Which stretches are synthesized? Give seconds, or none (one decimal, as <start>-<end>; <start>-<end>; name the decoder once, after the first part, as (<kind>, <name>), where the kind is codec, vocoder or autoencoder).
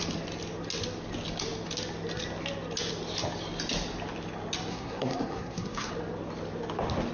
4.7-5.9 (codec, SNAC)